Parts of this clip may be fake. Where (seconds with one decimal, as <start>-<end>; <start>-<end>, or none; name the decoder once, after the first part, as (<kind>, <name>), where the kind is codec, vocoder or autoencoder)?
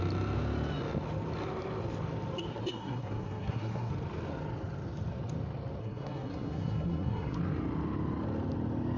2.5-3.9 (codec, SNAC); 5.8-7.4